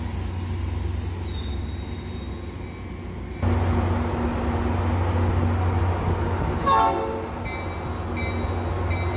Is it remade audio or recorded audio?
recorded